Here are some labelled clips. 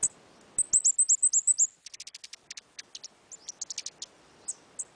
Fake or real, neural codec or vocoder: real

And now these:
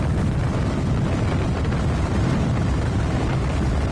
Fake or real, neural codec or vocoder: real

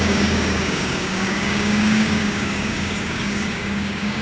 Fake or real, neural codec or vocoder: fake, codec, DAC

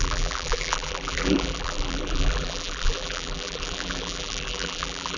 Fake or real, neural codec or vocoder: fake, vocoder, BigVGAN v2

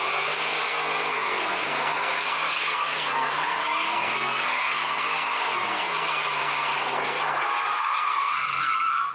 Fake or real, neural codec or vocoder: fake, codec, SNAC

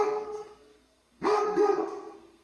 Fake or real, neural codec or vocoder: fake, codec, SNAC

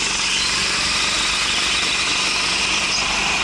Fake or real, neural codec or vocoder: real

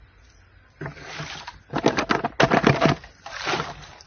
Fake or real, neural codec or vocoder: real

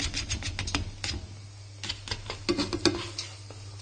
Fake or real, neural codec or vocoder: real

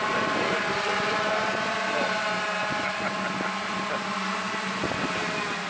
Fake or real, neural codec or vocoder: real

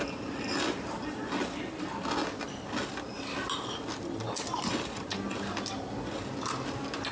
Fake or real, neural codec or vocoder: real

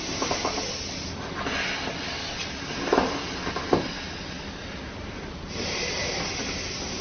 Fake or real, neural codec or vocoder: real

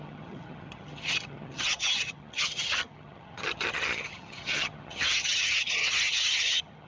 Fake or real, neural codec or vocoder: fake, vocoder, HiFi-GAN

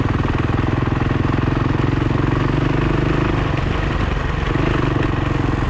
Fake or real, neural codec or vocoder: real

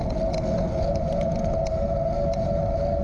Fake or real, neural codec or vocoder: real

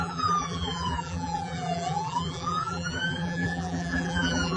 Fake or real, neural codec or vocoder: fake, vocoder, BigVGAN v2